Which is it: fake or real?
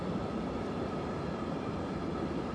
real